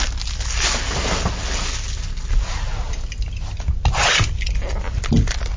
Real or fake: real